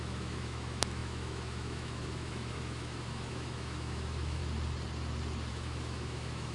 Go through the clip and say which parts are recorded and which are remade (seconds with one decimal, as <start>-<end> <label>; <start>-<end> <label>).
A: 0.0-4.4 remade; 4.4-5.5 recorded; 5.5-6.5 remade